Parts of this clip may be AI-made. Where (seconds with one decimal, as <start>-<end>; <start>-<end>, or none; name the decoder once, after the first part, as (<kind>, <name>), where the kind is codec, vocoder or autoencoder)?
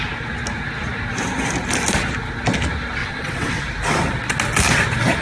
3.0-3.6 (vocoder, WaveNeXt)